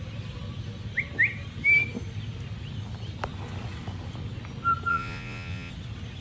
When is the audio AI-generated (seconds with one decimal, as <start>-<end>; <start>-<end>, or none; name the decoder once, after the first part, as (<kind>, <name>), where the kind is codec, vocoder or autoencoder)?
4.9-5.7 (vocoder, Vocos)